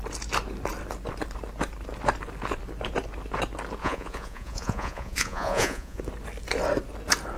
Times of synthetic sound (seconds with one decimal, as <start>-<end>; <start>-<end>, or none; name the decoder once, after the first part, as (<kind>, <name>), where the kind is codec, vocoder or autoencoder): 3.8-6.0 (vocoder, Vocos)

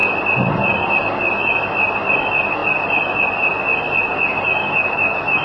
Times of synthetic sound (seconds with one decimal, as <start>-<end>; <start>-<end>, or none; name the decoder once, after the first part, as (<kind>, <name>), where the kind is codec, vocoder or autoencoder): 4.6-5.4 (autoencoder, DAC-VAE)

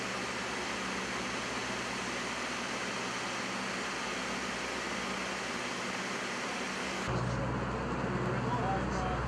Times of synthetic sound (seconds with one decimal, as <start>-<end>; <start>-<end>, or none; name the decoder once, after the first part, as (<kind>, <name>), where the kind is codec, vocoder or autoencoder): 6.8-7.4 (codec, DAC)